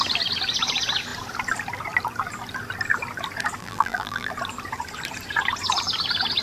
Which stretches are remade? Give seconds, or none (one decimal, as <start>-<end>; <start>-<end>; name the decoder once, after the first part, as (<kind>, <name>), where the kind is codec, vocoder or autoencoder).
3.6-4.3 (vocoder, BigVGAN v2)